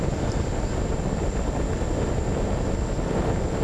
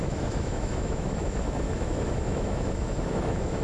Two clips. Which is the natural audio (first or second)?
first